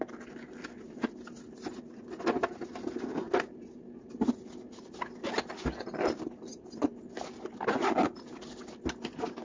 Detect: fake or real real